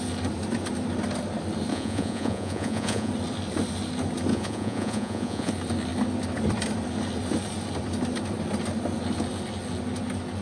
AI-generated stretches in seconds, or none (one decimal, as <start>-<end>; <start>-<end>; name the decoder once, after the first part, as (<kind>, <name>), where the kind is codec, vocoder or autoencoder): 1.7-3.1 (vocoder, Vocos); 4.3-5.5